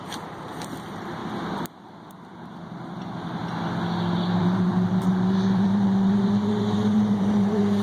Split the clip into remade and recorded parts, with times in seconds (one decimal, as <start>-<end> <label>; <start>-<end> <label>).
0.0-1.2 remade; 1.2-2.3 recorded; 2.3-3.4 remade; 3.4-4.4 recorded; 4.4-7.8 remade